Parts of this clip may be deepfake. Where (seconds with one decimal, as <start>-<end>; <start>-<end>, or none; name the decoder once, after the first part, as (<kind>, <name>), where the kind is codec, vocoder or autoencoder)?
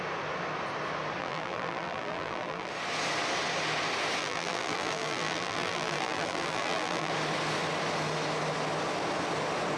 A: 1.2-2.7 (vocoder, BigVGAN v2); 4.2-7.1